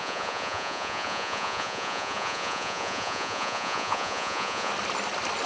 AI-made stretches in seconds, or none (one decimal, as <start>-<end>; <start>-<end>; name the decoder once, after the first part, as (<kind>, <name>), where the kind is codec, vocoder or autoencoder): 0.0-4.7 (vocoder, Vocos)

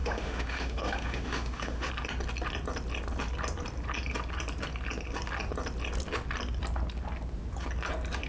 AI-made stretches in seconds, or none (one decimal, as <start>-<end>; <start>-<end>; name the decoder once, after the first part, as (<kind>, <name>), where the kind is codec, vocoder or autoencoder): 0.0-1.9 (autoencoder, DAC-VAE)

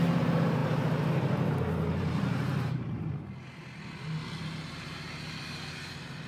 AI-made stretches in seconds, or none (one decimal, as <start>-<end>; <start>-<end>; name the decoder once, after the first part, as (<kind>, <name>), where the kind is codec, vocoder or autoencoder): 0.0-3.1 (vocoder, BigVGAN v2); 4.4-6.3

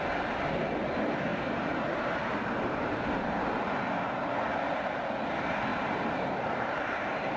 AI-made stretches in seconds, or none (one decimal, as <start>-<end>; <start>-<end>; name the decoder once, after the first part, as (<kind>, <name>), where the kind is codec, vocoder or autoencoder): 1.3-3.4 (vocoder, BigVGAN v2); 5.7-7.0

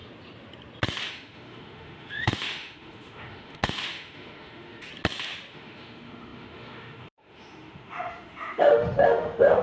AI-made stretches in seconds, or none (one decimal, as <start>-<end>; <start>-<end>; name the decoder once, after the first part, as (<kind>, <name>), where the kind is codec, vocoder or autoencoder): 1.1-4.9 (autoencoder, DAC-VAE); 5.5-9.6

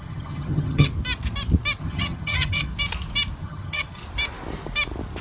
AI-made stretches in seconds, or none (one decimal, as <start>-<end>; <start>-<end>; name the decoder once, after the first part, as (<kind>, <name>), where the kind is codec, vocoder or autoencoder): 0.0-0.9 (vocoder, HiFi-GAN); 1.8-2.7; 3.4-4.0

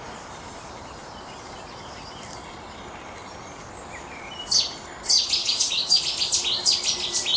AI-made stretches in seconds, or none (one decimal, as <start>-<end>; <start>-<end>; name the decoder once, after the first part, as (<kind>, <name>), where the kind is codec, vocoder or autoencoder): 5.4-6.0 (codec, DAC)

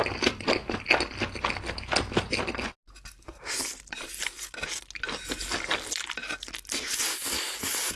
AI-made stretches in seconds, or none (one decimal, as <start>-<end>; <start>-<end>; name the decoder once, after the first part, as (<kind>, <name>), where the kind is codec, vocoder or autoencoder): none